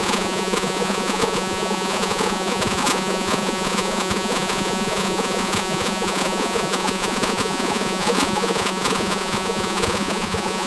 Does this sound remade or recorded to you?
remade